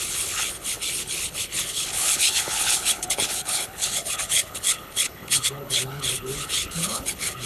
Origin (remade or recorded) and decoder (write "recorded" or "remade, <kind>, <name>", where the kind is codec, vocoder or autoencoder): remade, codec, HILCodec